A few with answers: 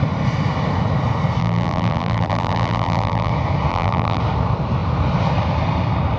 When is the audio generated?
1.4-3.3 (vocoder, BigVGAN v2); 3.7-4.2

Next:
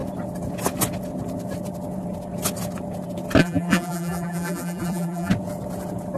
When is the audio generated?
3.4-5.3 (vocoder, BigVGAN v2)

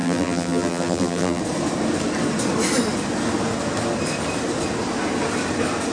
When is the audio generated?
0.0-1.4 (vocoder, BigVGAN v2)

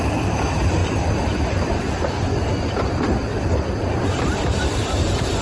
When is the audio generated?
0.0-5.4 (vocoder, BigVGAN v2)

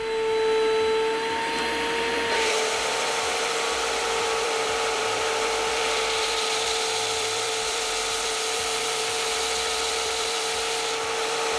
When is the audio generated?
2.0-11.6 (vocoder, BigVGAN v2)

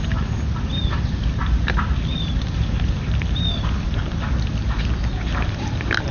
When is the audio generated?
none

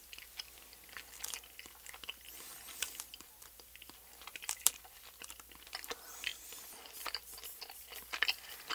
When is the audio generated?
4.1-4.7 (vocoder, BigVGAN v2)

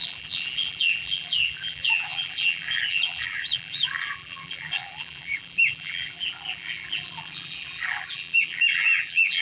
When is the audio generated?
0.0-9.4 (vocoder, BigVGAN v2)